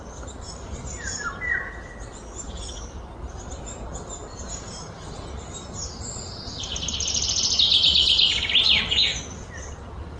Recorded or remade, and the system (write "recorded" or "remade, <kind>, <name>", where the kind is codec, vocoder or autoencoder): recorded